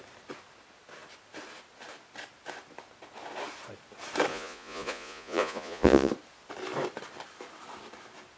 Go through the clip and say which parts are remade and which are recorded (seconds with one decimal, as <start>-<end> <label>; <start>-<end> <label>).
0.0-4.3 recorded; 4.3-6.1 remade; 6.1-8.4 recorded